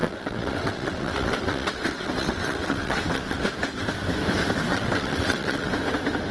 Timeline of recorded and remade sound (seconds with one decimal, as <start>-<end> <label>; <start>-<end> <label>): 0.0-3.4 remade; 3.4-4.7 recorded; 4.7-5.7 remade; 5.7-6.3 recorded